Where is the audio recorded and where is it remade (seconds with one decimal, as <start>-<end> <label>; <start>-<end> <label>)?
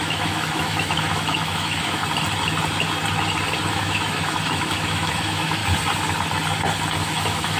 0.0-2.0 remade; 2.0-3.7 recorded; 3.7-5.6 remade; 5.6-7.0 recorded; 7.0-7.6 remade